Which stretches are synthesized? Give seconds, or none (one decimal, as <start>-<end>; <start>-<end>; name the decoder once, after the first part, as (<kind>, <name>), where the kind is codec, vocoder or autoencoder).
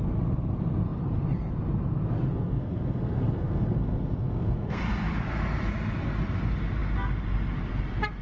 2.3-4.8 (codec, SNAC)